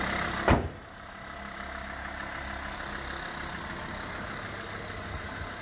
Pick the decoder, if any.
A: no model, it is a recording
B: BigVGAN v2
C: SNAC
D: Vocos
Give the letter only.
A